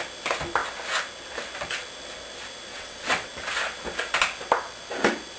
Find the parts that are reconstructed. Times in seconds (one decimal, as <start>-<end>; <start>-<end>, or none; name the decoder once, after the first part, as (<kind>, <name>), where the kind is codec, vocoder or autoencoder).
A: 2.7-3.3 (vocoder, WaveNeXt)